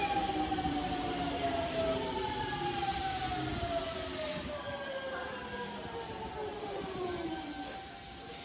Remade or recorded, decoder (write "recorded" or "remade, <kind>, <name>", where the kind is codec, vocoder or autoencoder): remade, vocoder, BigVGAN v2